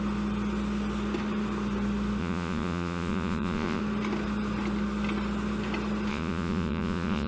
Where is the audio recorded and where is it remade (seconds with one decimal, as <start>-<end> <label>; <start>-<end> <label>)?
0.0-2.2 recorded; 2.2-3.8 remade; 3.8-6.1 recorded; 6.1-7.3 remade